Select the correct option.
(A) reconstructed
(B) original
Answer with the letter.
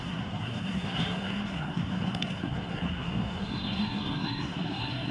A